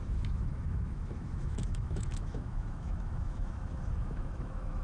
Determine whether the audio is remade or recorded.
remade